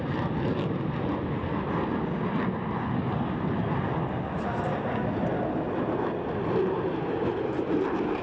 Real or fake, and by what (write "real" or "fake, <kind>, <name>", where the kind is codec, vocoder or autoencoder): real